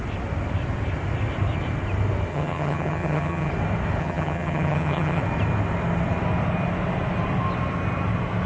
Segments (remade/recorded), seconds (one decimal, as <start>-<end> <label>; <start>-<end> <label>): 0.0-2.3 recorded; 2.3-3.5 remade; 3.5-4.0 recorded; 4.0-5.2 remade; 5.2-8.5 recorded